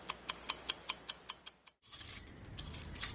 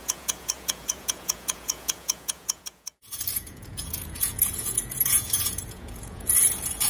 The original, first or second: first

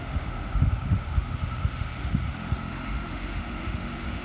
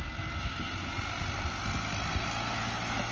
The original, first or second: second